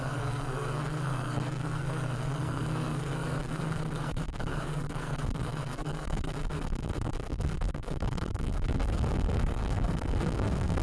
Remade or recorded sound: remade